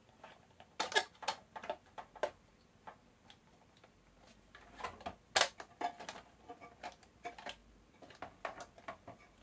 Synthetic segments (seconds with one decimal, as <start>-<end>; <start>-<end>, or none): none